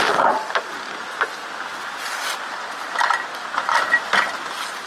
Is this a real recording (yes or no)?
yes